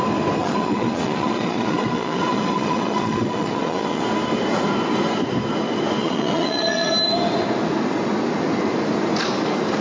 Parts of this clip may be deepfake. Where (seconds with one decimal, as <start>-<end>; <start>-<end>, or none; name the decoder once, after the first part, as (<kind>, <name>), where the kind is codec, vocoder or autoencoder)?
0.4-4.0 (vocoder, Vocos); 6.0-6.9